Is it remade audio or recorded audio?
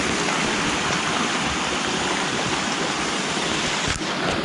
recorded